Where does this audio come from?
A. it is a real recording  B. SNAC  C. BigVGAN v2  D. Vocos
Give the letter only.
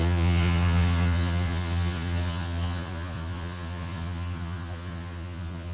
D